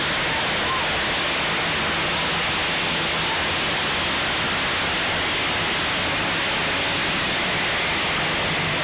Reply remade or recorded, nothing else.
recorded